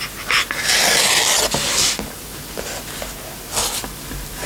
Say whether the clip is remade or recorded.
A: recorded